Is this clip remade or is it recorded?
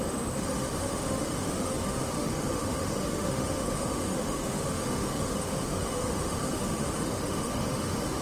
remade